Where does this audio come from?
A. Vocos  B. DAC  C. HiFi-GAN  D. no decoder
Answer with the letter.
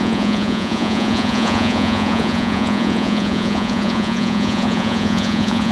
A